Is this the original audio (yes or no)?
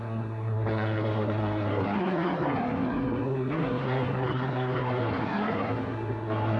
no